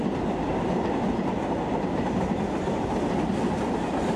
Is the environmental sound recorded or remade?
recorded